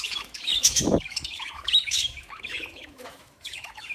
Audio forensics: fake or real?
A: fake